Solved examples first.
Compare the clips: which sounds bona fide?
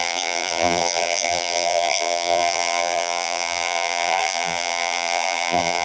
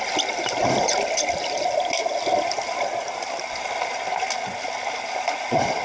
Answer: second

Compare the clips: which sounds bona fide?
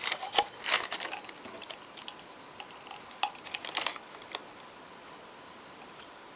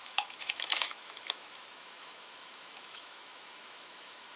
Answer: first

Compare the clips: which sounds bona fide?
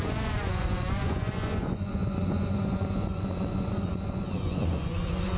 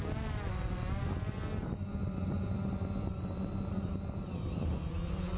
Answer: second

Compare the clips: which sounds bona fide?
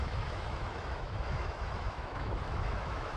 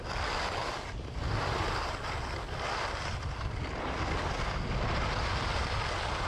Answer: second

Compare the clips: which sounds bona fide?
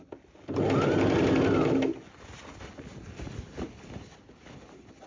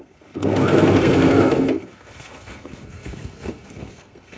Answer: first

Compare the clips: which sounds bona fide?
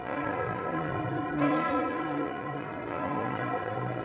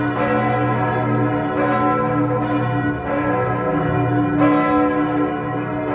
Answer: second